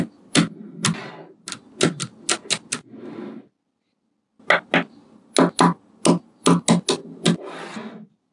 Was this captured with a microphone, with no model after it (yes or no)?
yes